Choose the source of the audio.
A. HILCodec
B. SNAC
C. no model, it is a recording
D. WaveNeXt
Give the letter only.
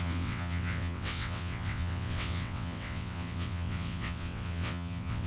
D